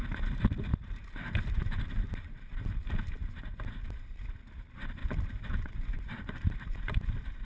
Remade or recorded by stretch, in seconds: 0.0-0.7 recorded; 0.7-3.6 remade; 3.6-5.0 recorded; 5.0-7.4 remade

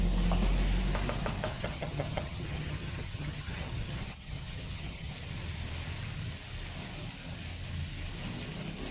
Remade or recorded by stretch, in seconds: 0.0-1.5 recorded; 1.5-5.1 remade; 5.1-8.9 recorded

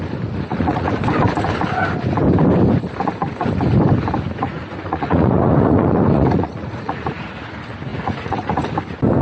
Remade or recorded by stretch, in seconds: 0.0-0.5 recorded; 0.5-1.0 remade; 1.0-4.4 recorded; 4.4-7.5 remade; 7.5-7.9 recorded; 7.9-8.7 remade; 8.7-9.2 recorded

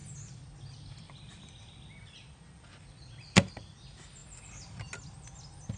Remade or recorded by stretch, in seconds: 0.0-5.8 recorded